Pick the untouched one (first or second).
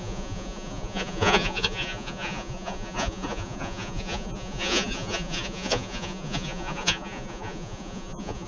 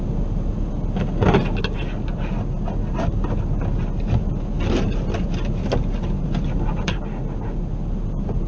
second